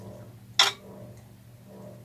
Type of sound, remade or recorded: recorded